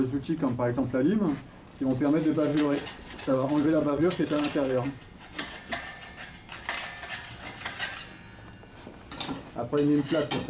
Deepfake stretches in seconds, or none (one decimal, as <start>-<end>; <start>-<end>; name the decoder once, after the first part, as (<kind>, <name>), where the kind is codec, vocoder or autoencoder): 2.5-6.3 (vocoder, WaveNeXt); 7.1-7.9